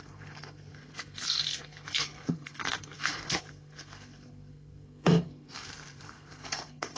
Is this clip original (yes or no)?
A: no